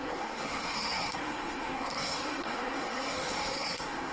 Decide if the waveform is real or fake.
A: fake